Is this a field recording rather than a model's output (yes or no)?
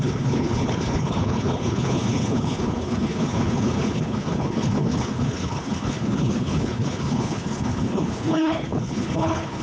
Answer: no